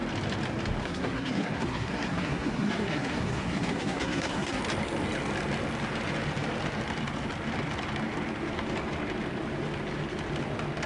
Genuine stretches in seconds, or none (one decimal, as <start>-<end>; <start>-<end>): 0.0-0.8; 4.6-10.9